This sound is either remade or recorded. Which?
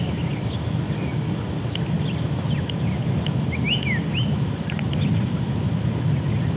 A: recorded